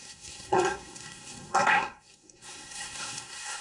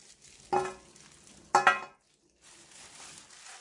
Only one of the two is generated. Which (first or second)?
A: first